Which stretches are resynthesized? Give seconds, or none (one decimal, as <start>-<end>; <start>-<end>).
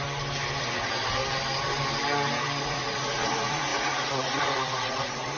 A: 0.6-1.2; 2.6-5.4